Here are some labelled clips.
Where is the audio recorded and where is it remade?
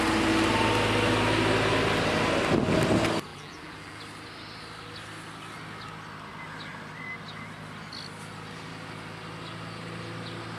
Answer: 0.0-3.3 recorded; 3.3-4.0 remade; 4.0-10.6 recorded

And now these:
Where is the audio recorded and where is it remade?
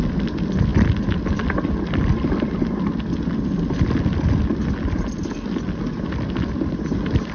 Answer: 0.0-7.3 recorded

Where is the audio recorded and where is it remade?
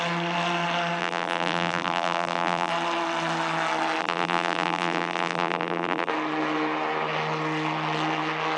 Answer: 0.0-1.0 recorded; 1.0-2.7 remade; 2.7-4.0 recorded; 4.0-6.1 remade; 6.1-8.6 recorded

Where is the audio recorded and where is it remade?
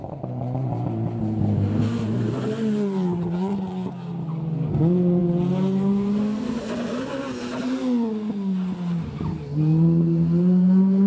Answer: 0.0-11.1 recorded